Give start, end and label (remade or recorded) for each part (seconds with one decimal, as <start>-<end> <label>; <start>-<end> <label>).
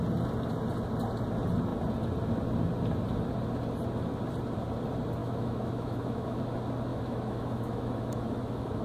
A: 0.0-5.2 recorded; 5.2-6.4 remade; 6.4-6.9 recorded; 6.9-8.8 remade